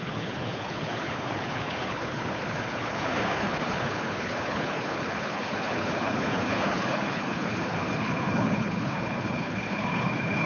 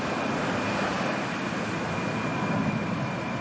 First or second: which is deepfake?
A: first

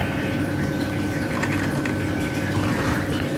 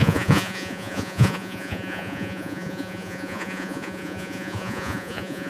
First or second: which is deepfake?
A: second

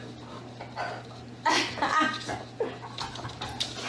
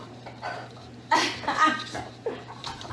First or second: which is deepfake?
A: second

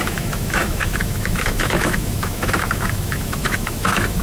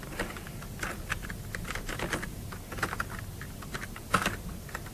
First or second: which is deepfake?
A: first